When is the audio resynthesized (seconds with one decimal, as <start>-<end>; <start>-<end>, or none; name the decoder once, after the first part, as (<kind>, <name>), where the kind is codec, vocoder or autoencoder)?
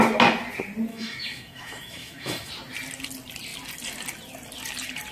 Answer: 0.9-2.5 (autoencoder, DAC-VAE)